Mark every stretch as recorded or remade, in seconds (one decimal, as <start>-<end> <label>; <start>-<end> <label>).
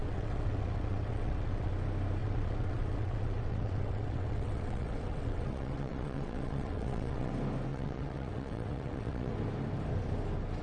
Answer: 0.0-1.7 remade; 1.7-2.2 recorded; 2.2-7.3 remade; 7.3-7.7 recorded; 7.7-9.3 remade; 9.3-10.6 recorded